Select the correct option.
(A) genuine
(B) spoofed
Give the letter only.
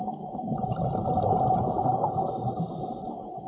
A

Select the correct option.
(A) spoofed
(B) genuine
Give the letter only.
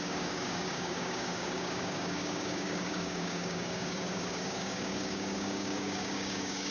A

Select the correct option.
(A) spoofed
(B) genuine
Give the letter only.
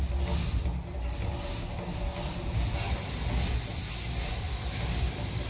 B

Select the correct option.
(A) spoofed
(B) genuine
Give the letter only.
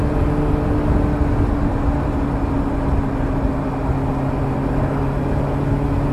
B